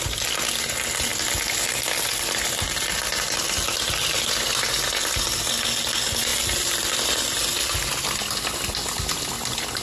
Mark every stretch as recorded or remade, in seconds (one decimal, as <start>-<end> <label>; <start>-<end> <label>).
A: 0.0-9.8 recorded